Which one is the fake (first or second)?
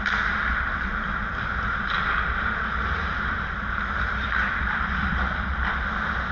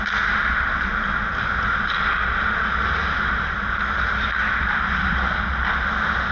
first